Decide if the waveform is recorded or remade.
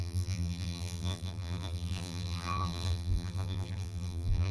remade